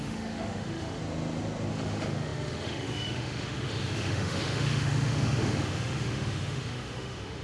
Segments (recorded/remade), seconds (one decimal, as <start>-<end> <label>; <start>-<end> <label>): 0.0-1.0 remade; 1.0-1.7 recorded; 1.7-7.4 remade